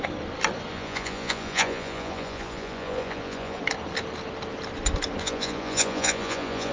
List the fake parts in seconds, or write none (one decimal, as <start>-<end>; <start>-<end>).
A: 0.7-3.6; 5.2-6.7